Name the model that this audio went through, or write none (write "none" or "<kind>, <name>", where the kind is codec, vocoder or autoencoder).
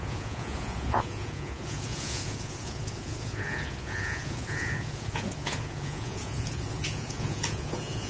vocoder, Vocos